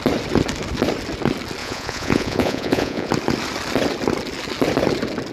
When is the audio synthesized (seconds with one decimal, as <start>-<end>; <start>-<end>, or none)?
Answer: 1.6-3.1